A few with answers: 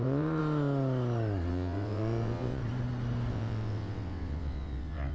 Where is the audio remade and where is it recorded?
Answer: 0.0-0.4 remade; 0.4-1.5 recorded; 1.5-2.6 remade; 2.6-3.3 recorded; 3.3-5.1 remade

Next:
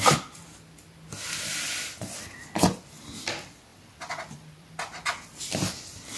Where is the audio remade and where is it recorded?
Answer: 0.0-3.7 recorded; 3.7-4.7 remade; 4.7-6.2 recorded

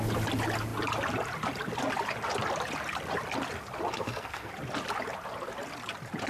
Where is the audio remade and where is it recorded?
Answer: 0.0-3.9 recorded; 3.9-4.5 remade; 4.5-6.3 recorded

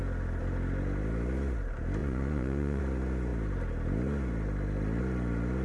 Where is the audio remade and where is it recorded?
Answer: 0.0-2.0 recorded; 2.0-2.8 remade; 2.8-5.6 recorded

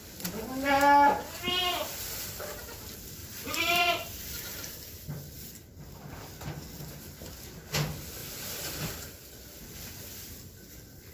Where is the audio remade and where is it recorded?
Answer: 0.0-3.2 recorded; 3.2-4.7 remade; 4.7-8.2 recorded; 8.2-9.6 remade; 9.6-11.1 recorded

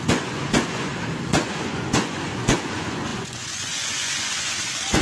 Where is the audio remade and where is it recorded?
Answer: 0.0-0.9 remade; 0.9-1.4 recorded; 1.4-5.0 remade